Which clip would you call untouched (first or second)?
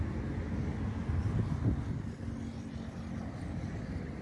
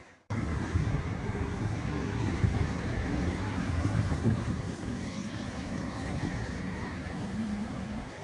first